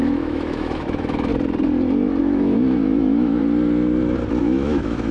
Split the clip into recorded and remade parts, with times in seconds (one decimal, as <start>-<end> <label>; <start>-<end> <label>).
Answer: 0.0-1.3 remade; 1.3-2.2 recorded; 2.2-3.4 remade; 3.4-4.4 recorded; 4.4-5.1 remade